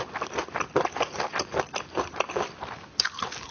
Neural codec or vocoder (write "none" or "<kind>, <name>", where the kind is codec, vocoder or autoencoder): vocoder, BigVGAN v2